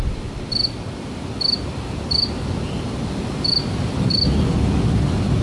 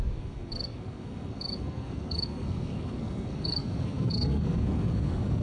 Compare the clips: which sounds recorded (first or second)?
first